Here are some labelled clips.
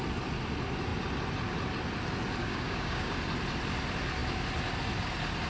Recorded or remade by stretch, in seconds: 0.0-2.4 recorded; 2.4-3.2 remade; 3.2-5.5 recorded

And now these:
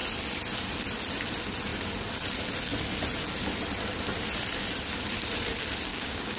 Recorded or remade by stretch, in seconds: 0.0-5.9 recorded; 5.9-6.4 remade

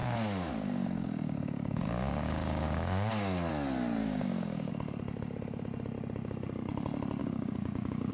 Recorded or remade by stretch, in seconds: 0.0-3.5 remade; 3.5-4.0 recorded; 4.0-4.7 remade; 4.7-7.2 recorded; 7.2-8.1 remade

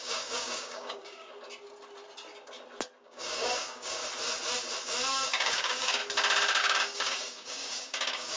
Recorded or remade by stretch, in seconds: 0.0-1.3 remade; 1.3-3.0 recorded; 3.0-4.0 remade; 4.0-5.1 recorded; 5.1-6.0 remade; 6.0-6.6 recorded; 6.6-8.4 remade